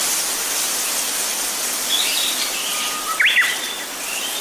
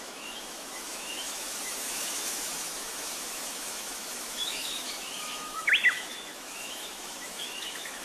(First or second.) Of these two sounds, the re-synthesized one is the second